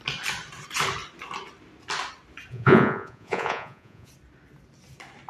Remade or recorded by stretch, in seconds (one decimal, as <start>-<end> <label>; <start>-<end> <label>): 0.0-2.5 recorded; 2.5-4.1 remade; 4.1-5.3 recorded